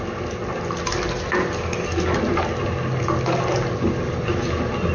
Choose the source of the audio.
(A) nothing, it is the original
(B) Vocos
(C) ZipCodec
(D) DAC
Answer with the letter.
A